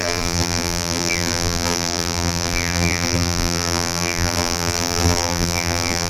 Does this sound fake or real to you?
fake